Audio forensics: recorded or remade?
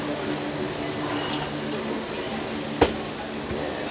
recorded